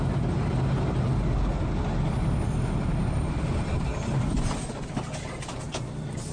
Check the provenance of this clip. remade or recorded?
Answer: recorded